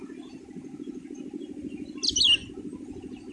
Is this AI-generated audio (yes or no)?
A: no